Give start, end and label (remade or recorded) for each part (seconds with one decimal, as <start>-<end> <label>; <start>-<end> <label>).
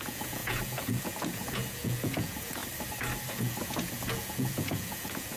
0.0-2.6 remade; 2.6-3.3 recorded; 3.3-5.4 remade